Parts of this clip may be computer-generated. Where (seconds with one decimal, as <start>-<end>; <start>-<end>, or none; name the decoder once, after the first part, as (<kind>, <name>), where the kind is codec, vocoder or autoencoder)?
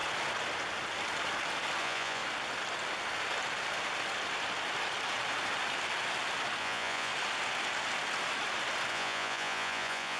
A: 1.8-2.2 (vocoder, Vocos); 6.6-7.1; 8.9-10.2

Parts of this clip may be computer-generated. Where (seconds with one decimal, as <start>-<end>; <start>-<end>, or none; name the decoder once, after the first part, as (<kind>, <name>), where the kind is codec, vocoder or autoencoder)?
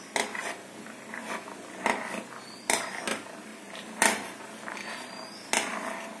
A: 3.5-5.5 (vocoder, BigVGAN v2)